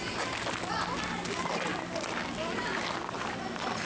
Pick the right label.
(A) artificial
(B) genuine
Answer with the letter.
B